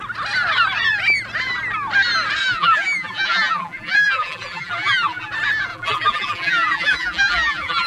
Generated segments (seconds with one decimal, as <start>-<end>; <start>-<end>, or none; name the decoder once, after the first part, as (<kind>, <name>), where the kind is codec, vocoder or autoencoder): 2.4-5.3 (vocoder, BigVGAN v2); 5.7-7.9